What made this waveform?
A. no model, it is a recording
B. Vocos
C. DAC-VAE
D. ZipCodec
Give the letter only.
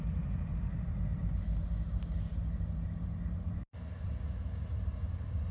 A